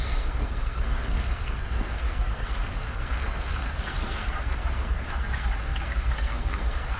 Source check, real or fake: fake